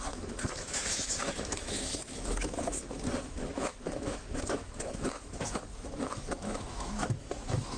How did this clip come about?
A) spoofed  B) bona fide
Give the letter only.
A